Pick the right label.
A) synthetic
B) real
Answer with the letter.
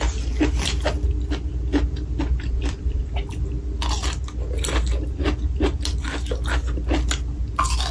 B